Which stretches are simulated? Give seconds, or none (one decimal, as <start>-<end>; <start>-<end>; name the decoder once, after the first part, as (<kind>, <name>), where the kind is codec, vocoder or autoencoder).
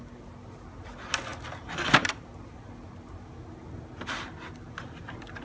none